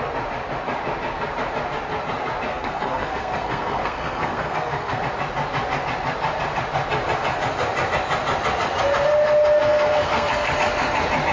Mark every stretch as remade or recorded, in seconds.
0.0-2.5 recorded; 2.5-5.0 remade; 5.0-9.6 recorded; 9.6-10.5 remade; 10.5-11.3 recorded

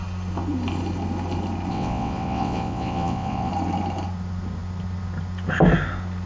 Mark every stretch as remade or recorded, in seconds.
0.0-1.7 recorded; 1.7-3.5 remade; 3.5-6.3 recorded

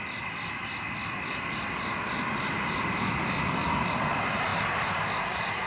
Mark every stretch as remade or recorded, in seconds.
0.0-4.5 remade; 4.5-5.7 recorded

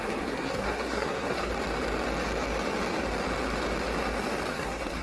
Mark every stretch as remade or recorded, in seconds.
0.0-1.5 remade; 1.5-4.5 recorded; 4.5-5.0 remade

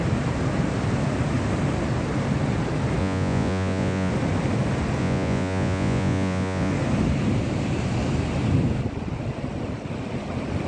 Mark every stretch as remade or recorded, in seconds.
0.0-3.0 recorded; 3.0-4.1 remade; 4.1-5.0 recorded; 5.0-6.7 remade; 6.7-10.7 recorded

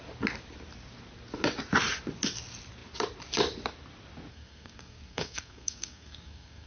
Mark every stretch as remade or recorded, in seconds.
0.0-4.3 recorded; 4.3-6.7 remade